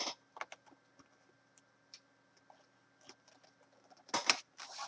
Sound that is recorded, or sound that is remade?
recorded